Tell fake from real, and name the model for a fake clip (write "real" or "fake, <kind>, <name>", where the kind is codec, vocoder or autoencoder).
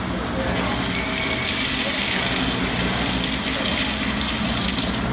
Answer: real